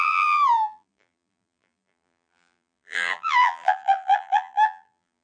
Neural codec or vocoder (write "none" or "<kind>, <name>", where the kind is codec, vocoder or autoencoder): vocoder, BigVGAN v2